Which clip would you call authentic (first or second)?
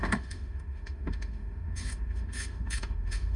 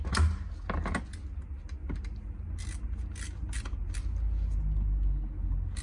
second